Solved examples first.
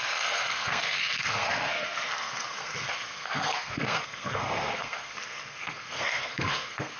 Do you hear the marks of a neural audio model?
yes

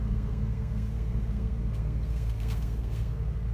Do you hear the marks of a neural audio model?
yes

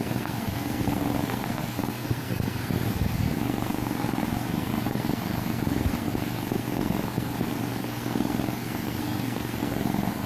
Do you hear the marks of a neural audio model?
yes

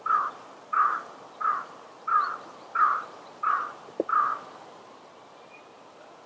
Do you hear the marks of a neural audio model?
no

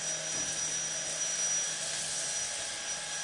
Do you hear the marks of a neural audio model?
no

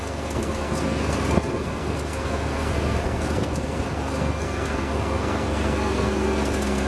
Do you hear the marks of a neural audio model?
yes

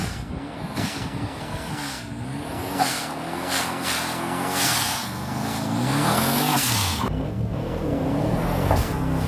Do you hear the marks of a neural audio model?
yes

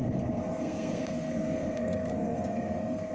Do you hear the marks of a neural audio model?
yes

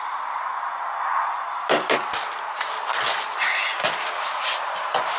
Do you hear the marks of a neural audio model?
no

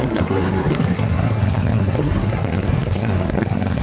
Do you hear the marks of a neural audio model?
yes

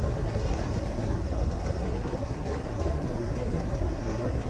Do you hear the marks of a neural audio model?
yes